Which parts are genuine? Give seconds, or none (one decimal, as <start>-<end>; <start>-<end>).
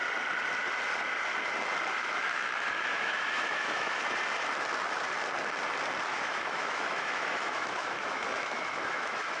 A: 0.0-1.9; 4.0-6.1